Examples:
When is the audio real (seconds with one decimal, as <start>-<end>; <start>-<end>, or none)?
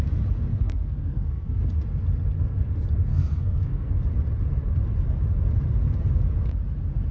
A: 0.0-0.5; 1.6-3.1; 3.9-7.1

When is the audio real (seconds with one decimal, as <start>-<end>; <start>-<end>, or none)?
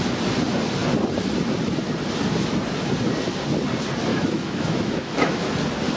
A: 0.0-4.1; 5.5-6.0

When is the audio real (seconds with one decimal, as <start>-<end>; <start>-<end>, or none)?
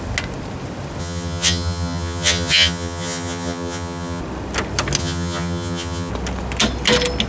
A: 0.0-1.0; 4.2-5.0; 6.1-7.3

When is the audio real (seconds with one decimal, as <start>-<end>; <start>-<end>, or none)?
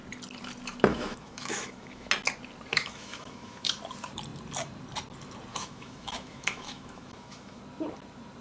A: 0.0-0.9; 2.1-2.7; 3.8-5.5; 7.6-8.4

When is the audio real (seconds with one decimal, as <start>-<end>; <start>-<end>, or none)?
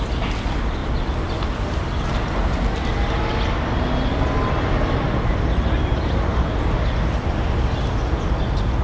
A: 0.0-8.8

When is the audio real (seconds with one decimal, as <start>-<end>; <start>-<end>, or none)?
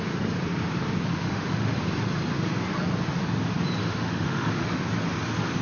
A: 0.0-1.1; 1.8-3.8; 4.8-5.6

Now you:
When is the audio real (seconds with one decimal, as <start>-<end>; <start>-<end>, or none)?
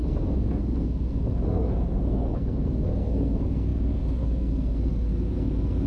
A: none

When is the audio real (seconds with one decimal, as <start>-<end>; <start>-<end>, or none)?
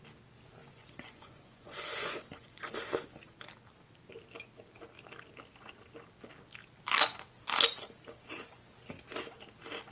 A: 0.0-0.6; 2.7-9.9